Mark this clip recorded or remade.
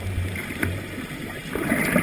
remade